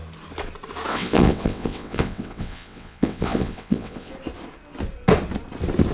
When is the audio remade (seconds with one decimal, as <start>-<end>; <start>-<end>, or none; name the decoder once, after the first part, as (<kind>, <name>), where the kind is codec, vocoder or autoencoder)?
0.9-4.1 (vocoder, WaveNeXt)